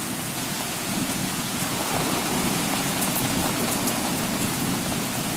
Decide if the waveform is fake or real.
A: fake